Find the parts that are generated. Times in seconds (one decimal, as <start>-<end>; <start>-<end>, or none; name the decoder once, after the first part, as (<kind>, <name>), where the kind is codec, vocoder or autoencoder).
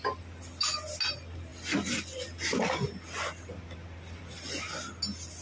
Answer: none